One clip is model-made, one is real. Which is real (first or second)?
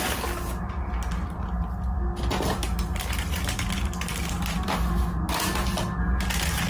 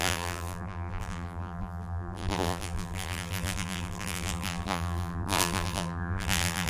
first